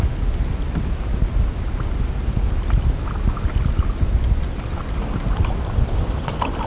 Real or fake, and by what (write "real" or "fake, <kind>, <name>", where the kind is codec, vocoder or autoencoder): real